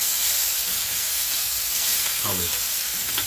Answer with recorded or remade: remade